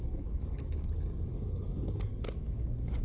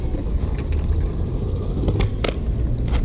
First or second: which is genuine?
second